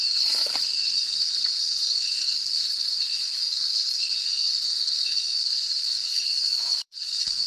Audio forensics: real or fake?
fake